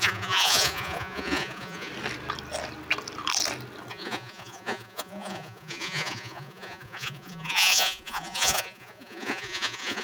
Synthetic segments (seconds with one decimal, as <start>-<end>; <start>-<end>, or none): 0.0-1.9; 3.9-10.0